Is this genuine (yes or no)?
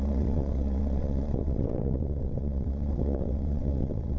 no